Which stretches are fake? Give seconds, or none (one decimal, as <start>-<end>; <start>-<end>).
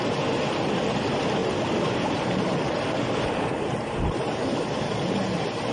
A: 1.4-4.8